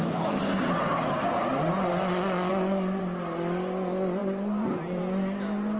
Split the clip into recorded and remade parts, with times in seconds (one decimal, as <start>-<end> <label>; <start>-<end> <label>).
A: 0.0-4.2 recorded; 4.2-5.0 remade; 5.0-5.8 recorded